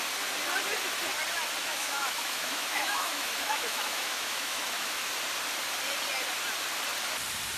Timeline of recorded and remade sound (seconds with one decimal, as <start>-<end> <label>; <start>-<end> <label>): 0.0-1.6 recorded; 1.6-5.1 remade; 5.1-7.6 recorded